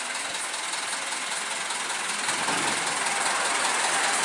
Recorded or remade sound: recorded